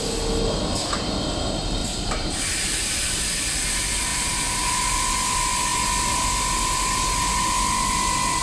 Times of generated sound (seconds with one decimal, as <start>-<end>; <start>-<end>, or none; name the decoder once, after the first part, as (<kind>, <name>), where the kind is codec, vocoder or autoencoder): 1.8-3.2 (vocoder, BigVGAN v2); 4.1-4.9